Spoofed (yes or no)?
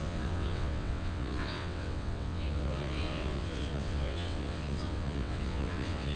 yes